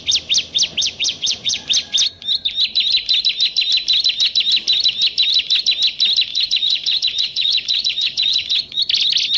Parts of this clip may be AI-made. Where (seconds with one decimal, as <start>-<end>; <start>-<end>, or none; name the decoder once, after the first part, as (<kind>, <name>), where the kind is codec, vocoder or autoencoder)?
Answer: 0.8-1.7 (vocoder, Vocos); 6.3-8.8